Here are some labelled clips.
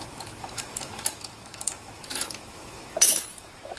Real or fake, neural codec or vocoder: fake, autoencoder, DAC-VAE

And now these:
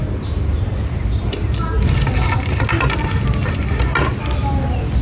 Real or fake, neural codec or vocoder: real